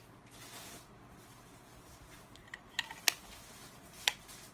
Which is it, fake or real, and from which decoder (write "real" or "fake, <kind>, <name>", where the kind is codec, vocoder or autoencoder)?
real